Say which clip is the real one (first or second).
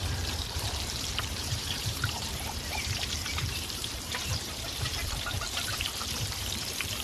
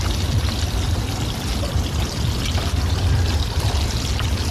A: second